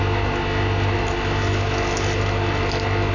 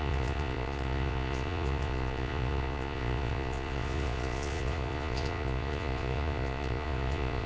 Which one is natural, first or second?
first